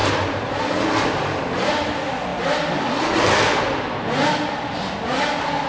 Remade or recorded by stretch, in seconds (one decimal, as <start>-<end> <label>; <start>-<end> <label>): 0.0-0.7 remade; 0.7-5.7 recorded